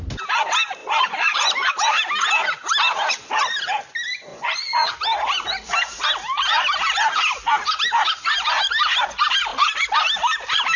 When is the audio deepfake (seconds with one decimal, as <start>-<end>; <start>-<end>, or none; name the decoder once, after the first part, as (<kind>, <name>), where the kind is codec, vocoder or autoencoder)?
0.8-1.7 (vocoder, Vocos); 4.3-4.9